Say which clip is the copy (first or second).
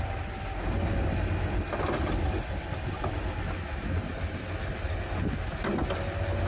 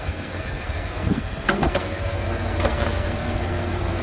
second